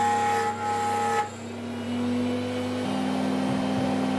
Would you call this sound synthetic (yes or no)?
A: no